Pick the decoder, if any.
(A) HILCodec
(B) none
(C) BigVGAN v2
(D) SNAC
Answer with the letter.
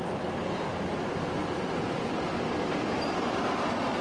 B